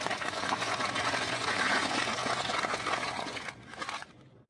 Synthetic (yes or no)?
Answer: yes